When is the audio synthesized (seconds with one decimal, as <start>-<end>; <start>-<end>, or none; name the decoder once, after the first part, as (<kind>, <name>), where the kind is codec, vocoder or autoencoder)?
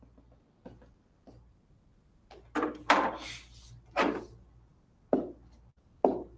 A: none